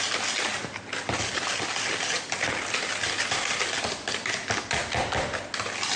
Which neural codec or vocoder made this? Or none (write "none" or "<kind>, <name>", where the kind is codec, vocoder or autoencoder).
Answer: none